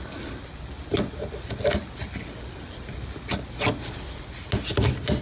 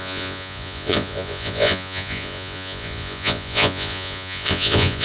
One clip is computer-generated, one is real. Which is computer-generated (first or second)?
second